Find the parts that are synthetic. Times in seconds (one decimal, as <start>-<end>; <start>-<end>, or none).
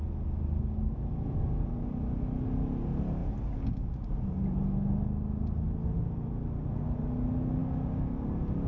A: none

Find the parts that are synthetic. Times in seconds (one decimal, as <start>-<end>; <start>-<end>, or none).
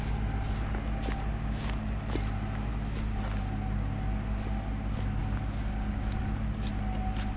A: none